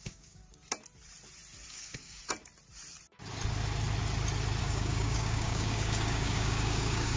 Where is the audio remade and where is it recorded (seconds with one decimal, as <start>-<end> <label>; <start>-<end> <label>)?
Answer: 0.0-0.4 remade; 0.4-1.7 recorded; 1.7-2.2 remade; 2.2-4.6 recorded; 4.6-7.2 remade